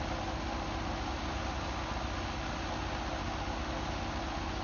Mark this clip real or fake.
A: real